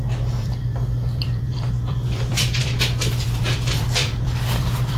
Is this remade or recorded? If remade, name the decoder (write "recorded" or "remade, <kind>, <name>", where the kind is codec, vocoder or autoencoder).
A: remade, vocoder, BigVGAN v2